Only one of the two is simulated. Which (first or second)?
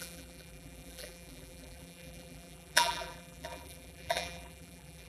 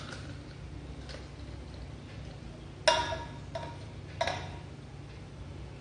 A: first